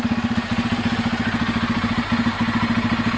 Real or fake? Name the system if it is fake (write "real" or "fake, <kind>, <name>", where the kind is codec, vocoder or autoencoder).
real